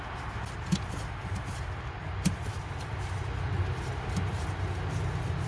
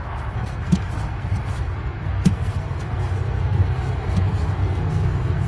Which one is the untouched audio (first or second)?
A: first